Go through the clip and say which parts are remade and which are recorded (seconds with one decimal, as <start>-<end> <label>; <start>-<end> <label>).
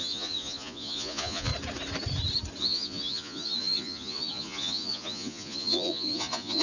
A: 0.0-1.5 remade; 1.5-2.6 recorded; 2.6-6.6 remade